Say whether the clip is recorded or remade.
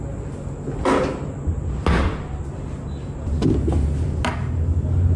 recorded